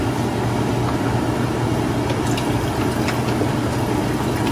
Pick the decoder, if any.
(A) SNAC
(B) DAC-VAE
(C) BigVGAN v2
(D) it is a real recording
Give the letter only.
D